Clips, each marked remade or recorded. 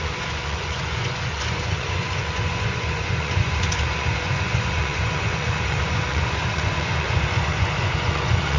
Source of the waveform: remade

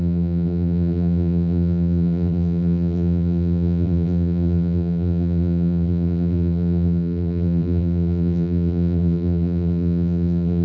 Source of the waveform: remade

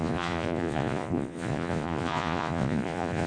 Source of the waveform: remade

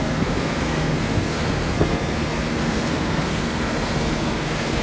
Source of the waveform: remade